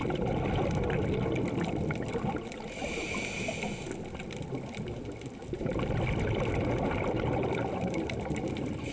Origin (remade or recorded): recorded